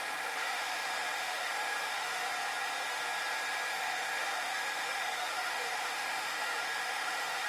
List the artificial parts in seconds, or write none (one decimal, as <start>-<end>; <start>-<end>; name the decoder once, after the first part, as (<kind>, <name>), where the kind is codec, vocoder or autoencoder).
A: 0.0-2.3 (autoencoder, DAC-VAE); 3.7-7.5